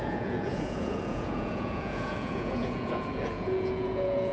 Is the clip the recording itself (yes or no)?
no